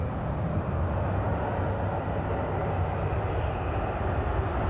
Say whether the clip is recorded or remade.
recorded